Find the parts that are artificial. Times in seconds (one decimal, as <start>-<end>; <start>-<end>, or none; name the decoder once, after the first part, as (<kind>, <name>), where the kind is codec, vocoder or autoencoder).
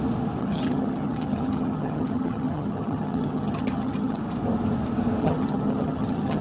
0.4-4.2 (vocoder, HiFi-GAN); 5.2-6.4